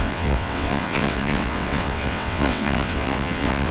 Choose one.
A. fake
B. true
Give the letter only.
A